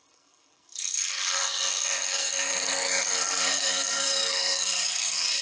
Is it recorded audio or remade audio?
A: remade